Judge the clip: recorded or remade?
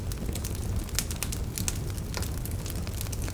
recorded